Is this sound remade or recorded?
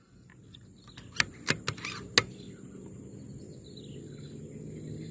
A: recorded